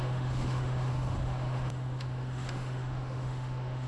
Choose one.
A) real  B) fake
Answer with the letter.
B